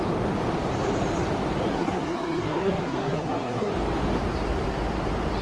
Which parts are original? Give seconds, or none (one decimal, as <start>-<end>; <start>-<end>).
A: 0.0-1.7; 3.7-5.4